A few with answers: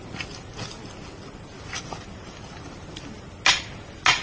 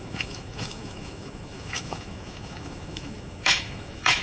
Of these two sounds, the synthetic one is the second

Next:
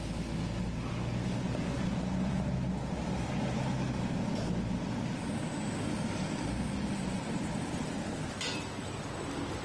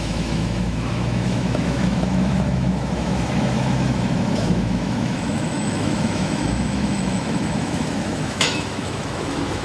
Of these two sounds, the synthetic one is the second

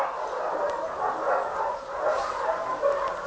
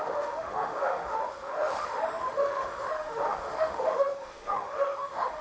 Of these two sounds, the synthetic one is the second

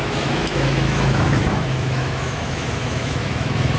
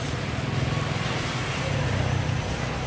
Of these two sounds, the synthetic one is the first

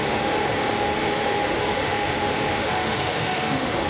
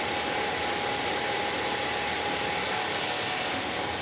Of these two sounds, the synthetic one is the first